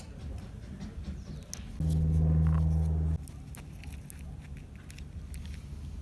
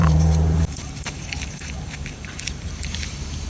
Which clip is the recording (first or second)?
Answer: first